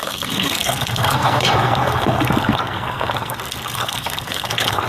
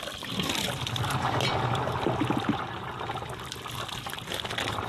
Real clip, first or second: second